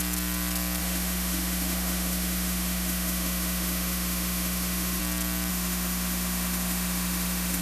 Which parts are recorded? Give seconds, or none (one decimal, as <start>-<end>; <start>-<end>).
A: 0.0-0.8; 5.0-5.5